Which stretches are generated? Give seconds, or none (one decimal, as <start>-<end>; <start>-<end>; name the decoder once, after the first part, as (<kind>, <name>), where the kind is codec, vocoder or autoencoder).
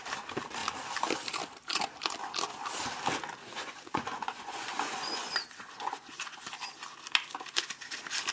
3.4-6.5 (vocoder, Vocos)